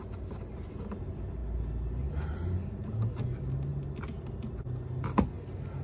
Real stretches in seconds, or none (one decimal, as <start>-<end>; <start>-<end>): 0.0-5.8